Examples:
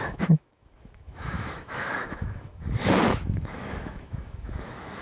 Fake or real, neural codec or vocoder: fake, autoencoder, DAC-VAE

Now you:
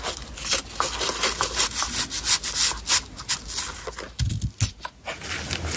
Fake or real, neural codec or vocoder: real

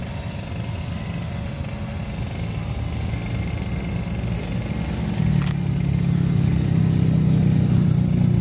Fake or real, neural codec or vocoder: real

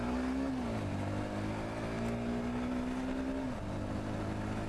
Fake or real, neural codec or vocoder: real